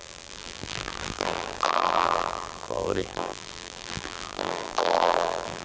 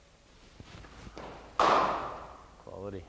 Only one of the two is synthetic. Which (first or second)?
first